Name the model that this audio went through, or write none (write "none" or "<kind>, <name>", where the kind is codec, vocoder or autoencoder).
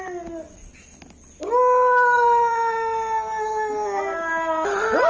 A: none